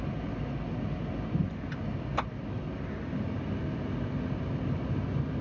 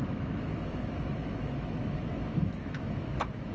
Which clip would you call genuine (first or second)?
first